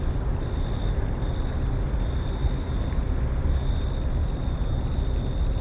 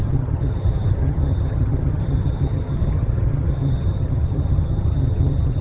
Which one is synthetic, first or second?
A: second